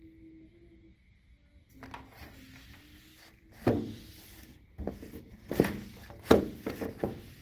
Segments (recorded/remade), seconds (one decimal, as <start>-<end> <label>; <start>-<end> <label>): 0.0-3.1 recorded; 3.1-6.4 remade; 6.4-7.4 recorded